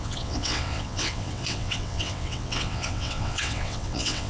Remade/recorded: remade